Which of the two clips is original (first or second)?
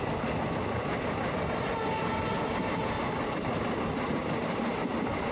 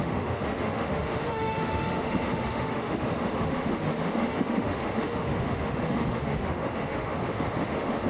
first